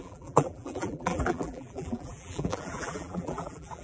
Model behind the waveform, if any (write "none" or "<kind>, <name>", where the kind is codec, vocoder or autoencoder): vocoder, BigVGAN v2